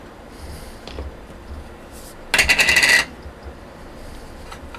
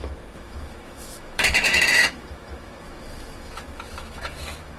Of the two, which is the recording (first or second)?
first